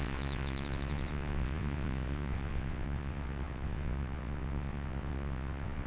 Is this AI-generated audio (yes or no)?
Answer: yes